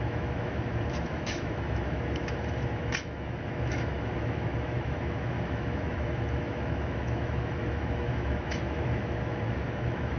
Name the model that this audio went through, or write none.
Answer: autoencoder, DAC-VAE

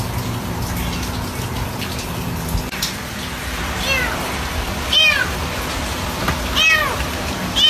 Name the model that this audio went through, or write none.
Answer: none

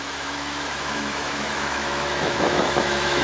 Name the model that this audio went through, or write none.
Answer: autoencoder, DAC-VAE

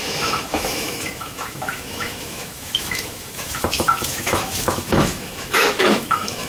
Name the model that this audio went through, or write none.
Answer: autoencoder, DAC-VAE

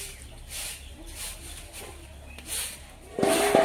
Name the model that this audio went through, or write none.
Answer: none